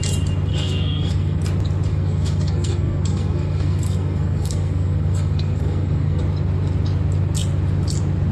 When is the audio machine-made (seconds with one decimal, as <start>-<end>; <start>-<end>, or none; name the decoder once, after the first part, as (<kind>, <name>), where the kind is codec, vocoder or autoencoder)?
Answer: 0.5-1.4 (codec, SNAC); 1.9-6.2